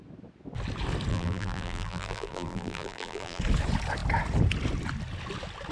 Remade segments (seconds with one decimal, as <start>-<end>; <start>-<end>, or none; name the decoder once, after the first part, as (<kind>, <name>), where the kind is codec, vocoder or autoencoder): 1.1-3.4 (vocoder, BigVGAN v2)